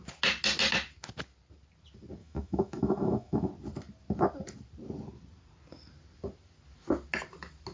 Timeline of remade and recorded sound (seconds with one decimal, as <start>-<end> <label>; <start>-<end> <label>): 0.0-2.2 recorded; 2.2-3.5 remade; 3.5-7.7 recorded